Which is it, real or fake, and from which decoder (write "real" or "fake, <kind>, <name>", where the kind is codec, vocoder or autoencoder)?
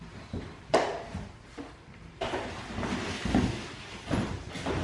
real